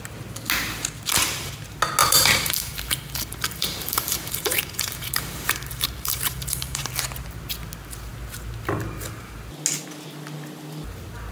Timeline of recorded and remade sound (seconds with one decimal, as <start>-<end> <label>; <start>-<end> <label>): 0.0-2.0 recorded; 2.0-6.9 remade; 6.9-11.3 recorded